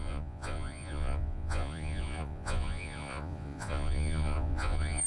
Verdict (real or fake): fake